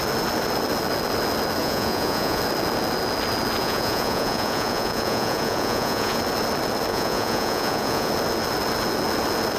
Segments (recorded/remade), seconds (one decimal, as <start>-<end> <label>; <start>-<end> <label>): 0.0-1.6 recorded; 1.6-2.4 remade; 2.4-3.6 recorded; 3.6-6.2 remade; 6.2-6.9 recorded; 6.9-8.1 remade; 8.1-9.6 recorded

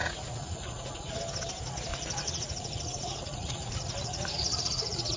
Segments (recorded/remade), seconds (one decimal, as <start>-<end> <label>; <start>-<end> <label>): 0.0-1.2 remade; 1.2-1.9 recorded; 1.9-5.2 remade

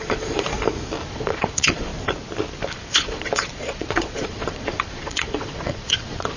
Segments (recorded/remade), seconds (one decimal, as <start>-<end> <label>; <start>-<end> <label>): 0.0-0.5 remade; 0.5-1.1 recorded; 1.1-1.9 remade; 1.9-2.7 recorded; 2.7-6.4 remade